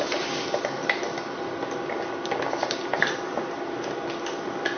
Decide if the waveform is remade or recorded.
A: recorded